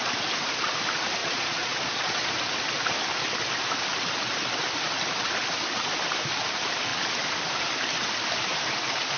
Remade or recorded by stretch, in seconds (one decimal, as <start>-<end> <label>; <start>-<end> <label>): 0.0-1.2 recorded; 1.2-2.3 remade; 2.3-9.2 recorded